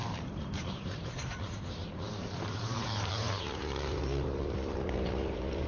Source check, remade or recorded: remade